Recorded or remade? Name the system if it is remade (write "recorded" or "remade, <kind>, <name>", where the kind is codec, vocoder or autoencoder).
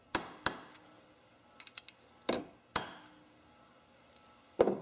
recorded